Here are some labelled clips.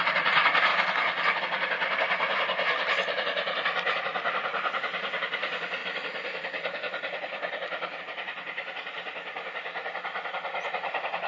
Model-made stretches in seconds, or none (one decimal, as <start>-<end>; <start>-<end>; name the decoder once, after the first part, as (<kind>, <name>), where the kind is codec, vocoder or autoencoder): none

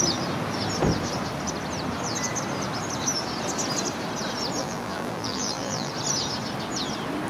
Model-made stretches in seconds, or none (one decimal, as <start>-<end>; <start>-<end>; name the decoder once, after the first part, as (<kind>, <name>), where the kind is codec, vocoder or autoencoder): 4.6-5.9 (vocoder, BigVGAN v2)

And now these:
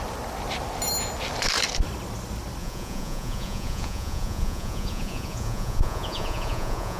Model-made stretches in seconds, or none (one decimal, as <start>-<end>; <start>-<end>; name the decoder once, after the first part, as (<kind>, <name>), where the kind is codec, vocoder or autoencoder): 2.6-7.0 (vocoder, Vocos)

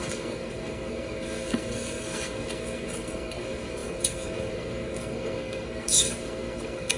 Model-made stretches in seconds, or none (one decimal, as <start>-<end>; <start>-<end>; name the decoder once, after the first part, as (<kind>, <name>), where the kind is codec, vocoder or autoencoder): 0.0-7.0 (codec, SNAC)

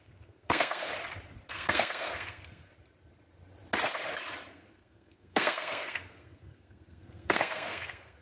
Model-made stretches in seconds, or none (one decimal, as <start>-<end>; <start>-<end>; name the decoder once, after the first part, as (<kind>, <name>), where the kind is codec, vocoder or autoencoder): 0.0-0.9 (codec, SNAC); 1.5-2.7; 4.5-8.2